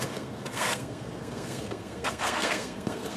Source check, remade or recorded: remade